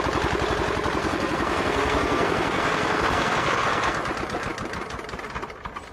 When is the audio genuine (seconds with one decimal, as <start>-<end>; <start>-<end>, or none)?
0.0-1.0; 4.0-5.9